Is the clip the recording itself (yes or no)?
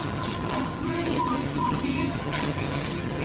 no